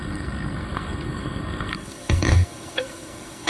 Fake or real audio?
fake